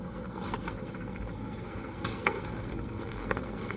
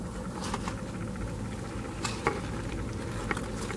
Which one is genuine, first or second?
second